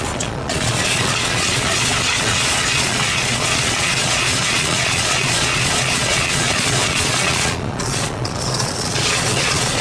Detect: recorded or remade remade